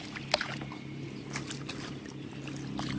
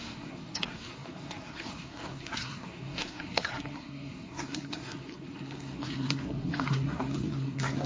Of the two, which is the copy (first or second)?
second